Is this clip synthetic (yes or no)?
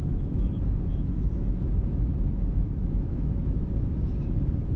yes